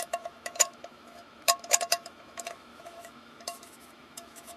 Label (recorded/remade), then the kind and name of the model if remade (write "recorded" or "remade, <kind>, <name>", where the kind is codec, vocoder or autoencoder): remade, autoencoder, DAC-VAE